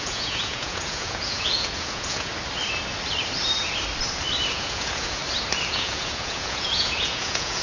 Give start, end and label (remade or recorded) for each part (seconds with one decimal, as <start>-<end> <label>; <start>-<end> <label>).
0.0-2.3 remade; 2.3-4.5 recorded; 4.5-5.2 remade; 5.2-5.7 recorded; 5.7-7.6 remade